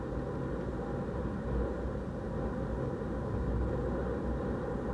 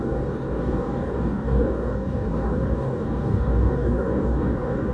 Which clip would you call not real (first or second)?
second